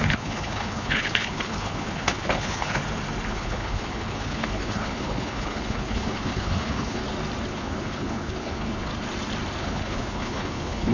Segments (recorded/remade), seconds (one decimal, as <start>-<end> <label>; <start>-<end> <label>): 0.0-2.8 remade; 2.8-3.3 recorded; 3.3-7.0 remade; 7.0-7.5 recorded; 7.5-8.9 remade; 8.9-9.6 recorded; 9.6-10.9 remade